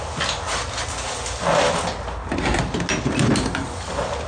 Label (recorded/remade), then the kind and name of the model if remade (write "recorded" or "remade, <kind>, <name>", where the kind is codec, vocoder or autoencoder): recorded